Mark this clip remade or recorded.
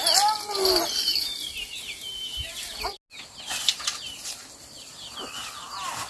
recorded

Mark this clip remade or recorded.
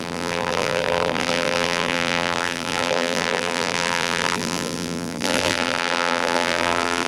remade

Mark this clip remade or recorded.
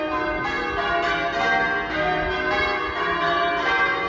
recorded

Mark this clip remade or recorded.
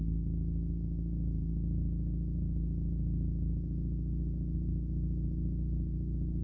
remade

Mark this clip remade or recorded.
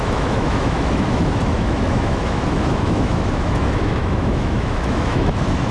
remade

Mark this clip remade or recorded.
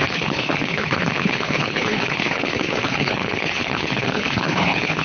remade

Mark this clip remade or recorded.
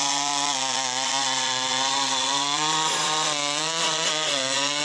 remade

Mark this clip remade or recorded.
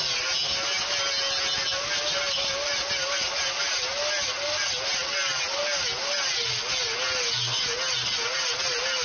recorded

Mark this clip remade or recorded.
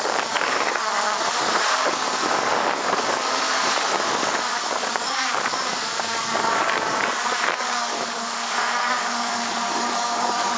remade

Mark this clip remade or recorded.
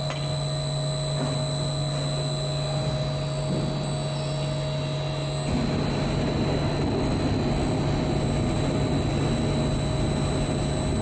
recorded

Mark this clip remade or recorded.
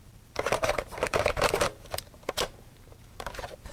remade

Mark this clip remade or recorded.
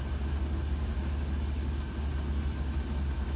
recorded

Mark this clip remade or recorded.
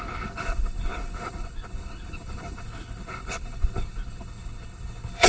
remade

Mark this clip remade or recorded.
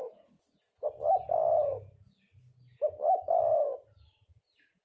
recorded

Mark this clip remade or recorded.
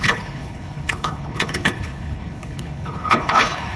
remade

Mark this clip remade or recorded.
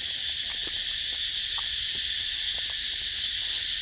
recorded